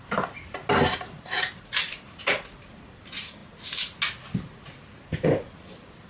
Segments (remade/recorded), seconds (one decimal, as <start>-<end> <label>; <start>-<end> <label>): 0.0-6.1 recorded